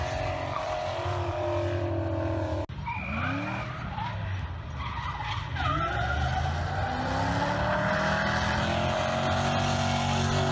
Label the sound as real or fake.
real